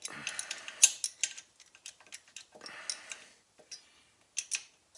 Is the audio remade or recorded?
recorded